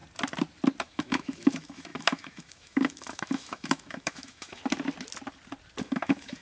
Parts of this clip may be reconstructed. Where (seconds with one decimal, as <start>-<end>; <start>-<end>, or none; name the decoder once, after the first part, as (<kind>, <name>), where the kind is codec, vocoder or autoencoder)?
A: 0.8-4.6 (autoencoder, DAC-VAE); 5.8-6.4